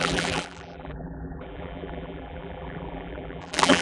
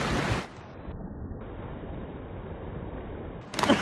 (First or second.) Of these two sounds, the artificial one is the first